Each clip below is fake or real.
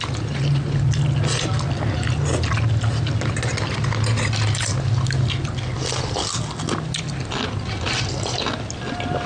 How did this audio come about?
real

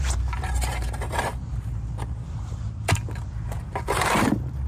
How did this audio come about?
fake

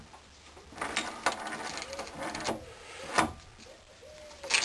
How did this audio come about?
real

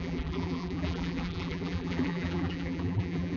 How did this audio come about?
fake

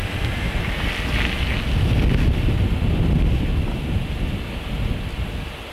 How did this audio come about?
real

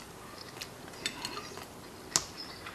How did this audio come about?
real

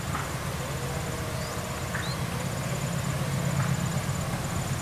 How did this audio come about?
real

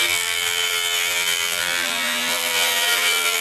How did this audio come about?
fake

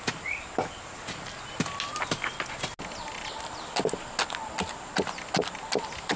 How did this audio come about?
real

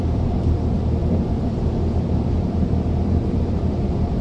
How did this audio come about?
fake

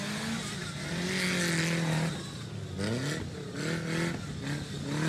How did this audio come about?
real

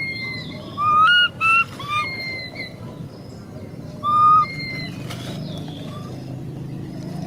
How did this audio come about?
real